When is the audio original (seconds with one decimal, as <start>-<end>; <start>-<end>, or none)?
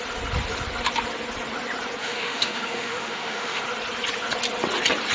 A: 0.0-2.0; 3.6-5.1